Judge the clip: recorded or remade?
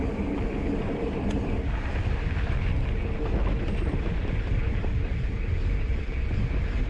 recorded